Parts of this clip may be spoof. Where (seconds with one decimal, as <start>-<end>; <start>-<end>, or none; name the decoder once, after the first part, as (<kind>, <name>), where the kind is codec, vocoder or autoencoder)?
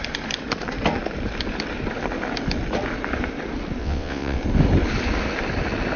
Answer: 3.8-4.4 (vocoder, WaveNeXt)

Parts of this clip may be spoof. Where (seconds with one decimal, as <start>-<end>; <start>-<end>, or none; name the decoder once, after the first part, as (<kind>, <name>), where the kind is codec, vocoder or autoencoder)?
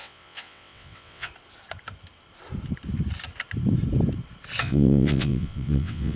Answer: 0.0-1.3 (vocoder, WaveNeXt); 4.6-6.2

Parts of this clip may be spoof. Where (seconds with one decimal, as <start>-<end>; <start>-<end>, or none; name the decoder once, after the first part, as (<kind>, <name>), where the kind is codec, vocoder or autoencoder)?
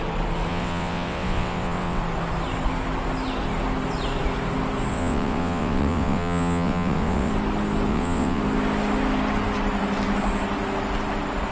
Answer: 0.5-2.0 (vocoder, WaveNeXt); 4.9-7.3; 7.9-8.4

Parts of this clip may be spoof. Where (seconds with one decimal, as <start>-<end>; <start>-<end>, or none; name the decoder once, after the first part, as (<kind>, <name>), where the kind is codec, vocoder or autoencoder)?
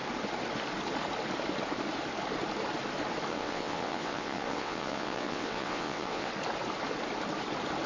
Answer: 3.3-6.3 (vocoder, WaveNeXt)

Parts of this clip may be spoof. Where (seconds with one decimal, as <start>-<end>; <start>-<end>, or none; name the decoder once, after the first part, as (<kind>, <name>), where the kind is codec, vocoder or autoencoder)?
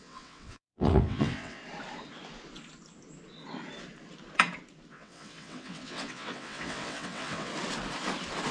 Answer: 0.0-1.6 (vocoder, WaveNeXt); 4.9-7.5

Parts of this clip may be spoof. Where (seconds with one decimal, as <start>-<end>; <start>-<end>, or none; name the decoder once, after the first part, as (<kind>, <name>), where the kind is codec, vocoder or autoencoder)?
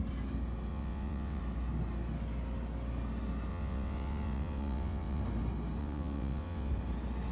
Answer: 0.7-1.4 (vocoder, WaveNeXt); 3.5-5.2; 5.8-6.7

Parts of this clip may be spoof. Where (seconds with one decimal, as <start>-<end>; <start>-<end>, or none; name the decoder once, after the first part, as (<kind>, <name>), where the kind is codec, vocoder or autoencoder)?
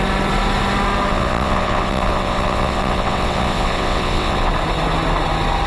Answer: 1.1-4.5 (vocoder, WaveNeXt)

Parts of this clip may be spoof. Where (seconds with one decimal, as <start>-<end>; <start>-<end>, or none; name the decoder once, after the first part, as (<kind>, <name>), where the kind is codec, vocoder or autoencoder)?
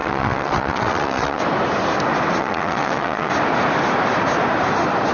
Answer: 0.0-1.4 (vocoder, WaveNeXt); 2.4-3.3